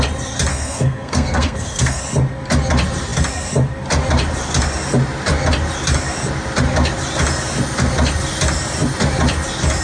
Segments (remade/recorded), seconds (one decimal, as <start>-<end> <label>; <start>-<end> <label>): 0.0-0.5 recorded; 0.5-2.0 remade; 2.0-9.8 recorded